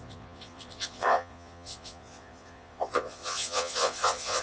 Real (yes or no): no